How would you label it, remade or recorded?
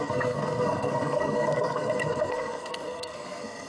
remade